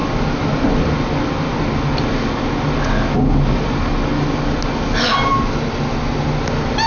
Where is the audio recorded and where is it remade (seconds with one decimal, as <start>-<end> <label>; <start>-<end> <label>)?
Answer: 0.0-0.9 remade; 0.9-6.9 recorded